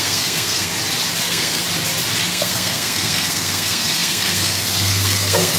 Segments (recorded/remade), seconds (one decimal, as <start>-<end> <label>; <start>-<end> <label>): 0.0-0.7 remade; 0.7-1.2 recorded; 1.2-1.6 remade; 1.6-2.3 recorded; 2.3-5.6 remade